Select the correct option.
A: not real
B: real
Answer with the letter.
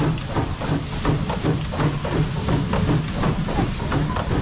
B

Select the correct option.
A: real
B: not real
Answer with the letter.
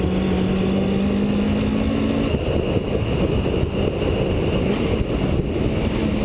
A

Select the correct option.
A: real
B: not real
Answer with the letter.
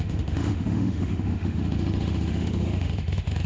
B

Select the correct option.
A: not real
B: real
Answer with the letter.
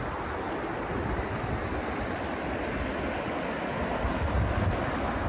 B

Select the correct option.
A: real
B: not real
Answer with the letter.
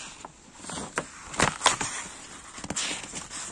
A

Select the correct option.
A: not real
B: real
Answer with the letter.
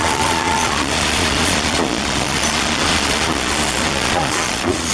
A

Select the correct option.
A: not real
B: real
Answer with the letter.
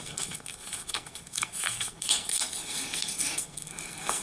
A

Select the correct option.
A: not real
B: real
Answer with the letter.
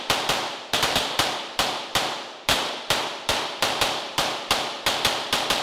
A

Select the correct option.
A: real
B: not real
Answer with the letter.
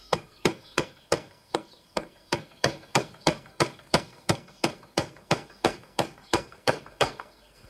B